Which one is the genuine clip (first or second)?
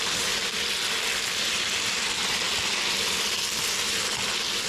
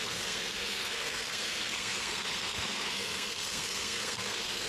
first